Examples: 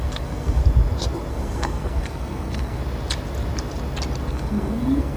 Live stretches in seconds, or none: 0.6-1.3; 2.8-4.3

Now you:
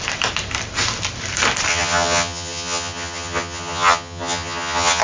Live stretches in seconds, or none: 0.0-1.7

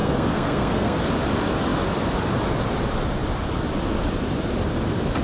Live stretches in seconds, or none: 1.0-5.2

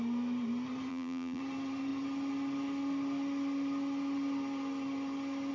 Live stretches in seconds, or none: 0.0-0.9; 1.4-5.5

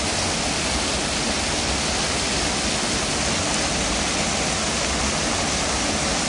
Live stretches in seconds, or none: 0.0-6.3

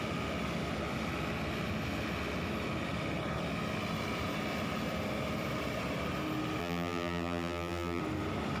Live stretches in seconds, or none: 0.0-6.6; 8.0-8.6

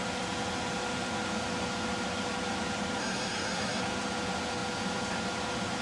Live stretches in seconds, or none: 0.0-3.0; 3.8-5.8